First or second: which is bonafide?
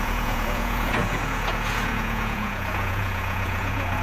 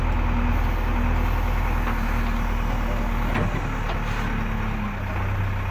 second